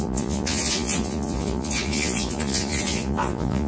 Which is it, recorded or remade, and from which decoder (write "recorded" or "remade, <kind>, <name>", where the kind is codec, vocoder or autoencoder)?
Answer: remade, vocoder, Vocos